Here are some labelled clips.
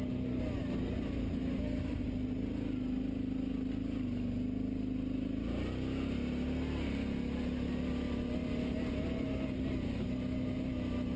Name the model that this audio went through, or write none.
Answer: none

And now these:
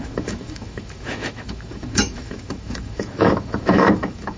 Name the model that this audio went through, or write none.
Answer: autoencoder, DAC-VAE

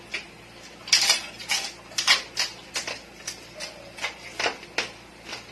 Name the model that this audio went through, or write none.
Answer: none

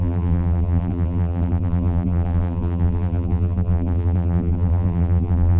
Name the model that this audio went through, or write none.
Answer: vocoder, BigVGAN v2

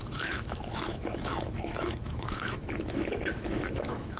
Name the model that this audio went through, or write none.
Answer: autoencoder, DAC-VAE